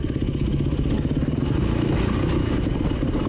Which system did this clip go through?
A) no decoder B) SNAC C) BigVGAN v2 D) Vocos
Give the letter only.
A